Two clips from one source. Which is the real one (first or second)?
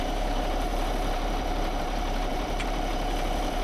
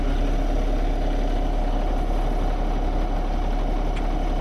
second